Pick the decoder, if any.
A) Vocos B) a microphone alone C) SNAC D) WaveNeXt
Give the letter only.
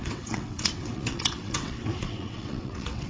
D